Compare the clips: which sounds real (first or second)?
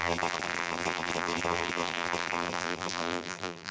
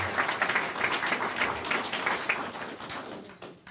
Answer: second